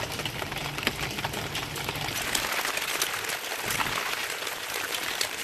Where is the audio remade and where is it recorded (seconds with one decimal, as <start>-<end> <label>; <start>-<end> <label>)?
0.0-4.2 recorded; 4.2-5.4 remade